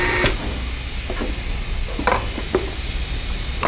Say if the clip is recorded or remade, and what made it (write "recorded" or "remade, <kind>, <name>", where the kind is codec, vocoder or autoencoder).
recorded